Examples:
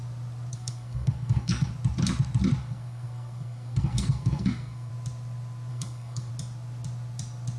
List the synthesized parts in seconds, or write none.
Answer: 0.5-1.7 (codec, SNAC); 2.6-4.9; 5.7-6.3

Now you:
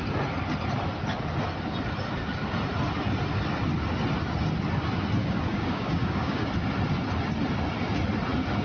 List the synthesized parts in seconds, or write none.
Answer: 5.2-6.5 (codec, DAC)

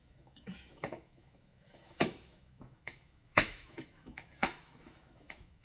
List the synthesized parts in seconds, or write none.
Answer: 0.0-5.6 (autoencoder, DAC-VAE)

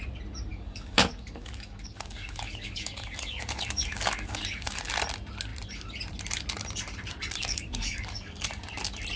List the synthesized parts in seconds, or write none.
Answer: 0.5-4.8 (codec, DAC); 7.4-8.5

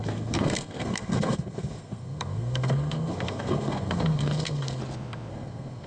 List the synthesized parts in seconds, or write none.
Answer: 0.0-4.8 (codec, SNAC); 5.3-5.9